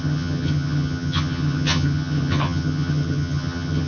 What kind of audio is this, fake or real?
fake